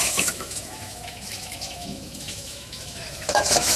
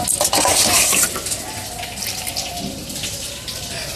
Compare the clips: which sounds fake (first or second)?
first